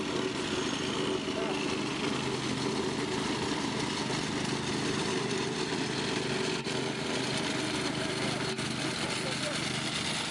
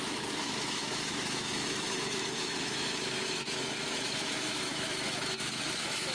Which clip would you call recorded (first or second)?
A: first